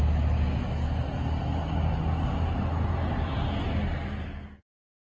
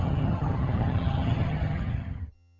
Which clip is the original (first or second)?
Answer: first